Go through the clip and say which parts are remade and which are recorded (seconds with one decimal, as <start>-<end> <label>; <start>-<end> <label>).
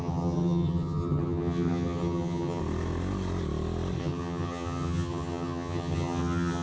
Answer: 0.0-2.6 remade; 2.6-4.0 recorded; 4.0-6.6 remade